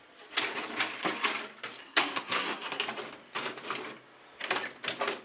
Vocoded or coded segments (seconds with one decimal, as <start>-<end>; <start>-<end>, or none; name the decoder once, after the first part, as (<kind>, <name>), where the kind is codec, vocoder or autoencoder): 1.8-2.8 (codec, SNAC)